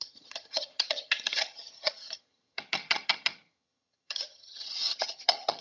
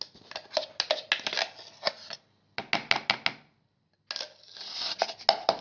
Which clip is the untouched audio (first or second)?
second